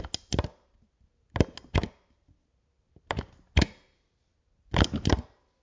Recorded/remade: recorded